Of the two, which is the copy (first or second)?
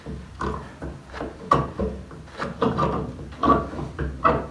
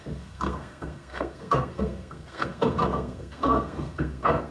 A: second